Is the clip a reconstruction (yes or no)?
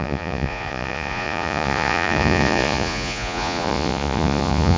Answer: yes